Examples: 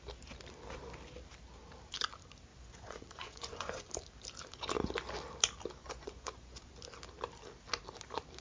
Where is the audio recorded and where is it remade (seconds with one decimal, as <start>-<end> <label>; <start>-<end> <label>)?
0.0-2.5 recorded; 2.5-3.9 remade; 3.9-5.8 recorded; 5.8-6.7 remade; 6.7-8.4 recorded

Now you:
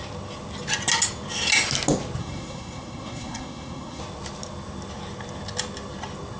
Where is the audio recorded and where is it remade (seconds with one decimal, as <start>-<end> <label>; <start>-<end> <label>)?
0.0-2.2 recorded; 2.2-4.0 remade; 4.0-6.4 recorded

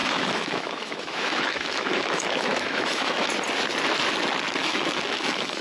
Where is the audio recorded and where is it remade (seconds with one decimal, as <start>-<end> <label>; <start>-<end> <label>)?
0.0-3.3 remade; 3.3-4.6 recorded; 4.6-5.6 remade